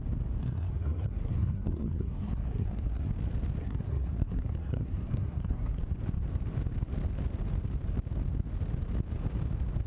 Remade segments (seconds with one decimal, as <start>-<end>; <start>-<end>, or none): 0.4-3.1; 3.6-5.8